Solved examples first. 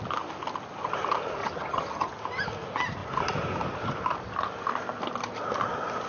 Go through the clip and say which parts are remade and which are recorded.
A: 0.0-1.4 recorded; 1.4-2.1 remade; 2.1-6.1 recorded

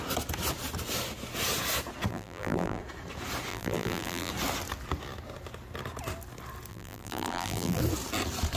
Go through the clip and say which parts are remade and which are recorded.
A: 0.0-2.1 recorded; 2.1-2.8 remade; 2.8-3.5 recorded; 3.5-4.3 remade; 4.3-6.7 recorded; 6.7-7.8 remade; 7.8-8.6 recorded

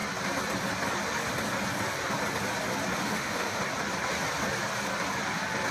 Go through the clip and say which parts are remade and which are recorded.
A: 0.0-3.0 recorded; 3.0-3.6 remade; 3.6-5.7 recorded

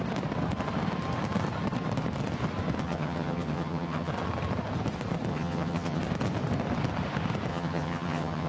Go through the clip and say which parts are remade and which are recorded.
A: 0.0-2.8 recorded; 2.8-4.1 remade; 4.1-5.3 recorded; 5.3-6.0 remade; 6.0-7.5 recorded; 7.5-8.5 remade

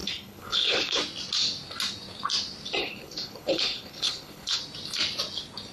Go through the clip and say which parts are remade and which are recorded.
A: 0.0-1.0 remade; 1.0-2.8 recorded; 2.8-4.6 remade; 4.6-5.7 recorded

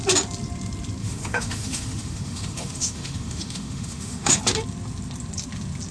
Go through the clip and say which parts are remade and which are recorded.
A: 0.0-1.0 recorded; 1.0-4.4 remade; 4.4-5.9 recorded